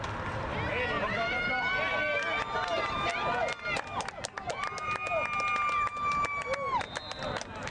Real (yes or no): yes